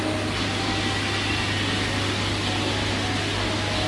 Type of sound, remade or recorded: recorded